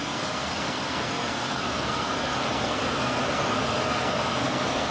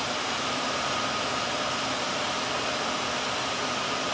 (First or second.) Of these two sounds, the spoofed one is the first